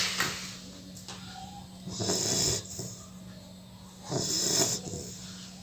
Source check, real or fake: real